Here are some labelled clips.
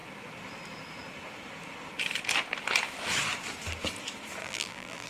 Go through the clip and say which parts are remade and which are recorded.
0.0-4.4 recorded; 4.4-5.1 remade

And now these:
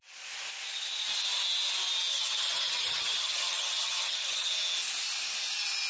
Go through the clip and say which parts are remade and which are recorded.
0.0-2.1 recorded; 2.1-4.5 remade; 4.5-5.9 recorded